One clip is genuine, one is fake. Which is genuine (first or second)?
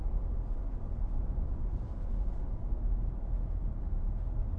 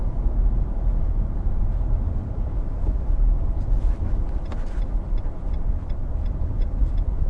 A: first